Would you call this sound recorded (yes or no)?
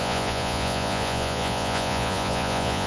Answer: no